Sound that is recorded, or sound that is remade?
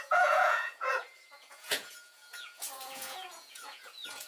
remade